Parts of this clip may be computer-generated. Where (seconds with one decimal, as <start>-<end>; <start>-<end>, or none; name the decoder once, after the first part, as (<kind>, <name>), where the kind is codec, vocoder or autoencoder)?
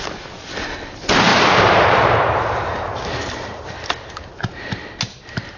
1.3-4.7 (vocoder, BigVGAN v2)